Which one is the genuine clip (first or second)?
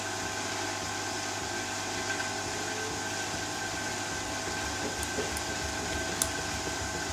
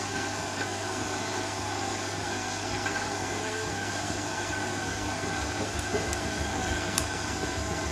first